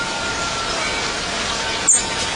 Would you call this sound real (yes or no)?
yes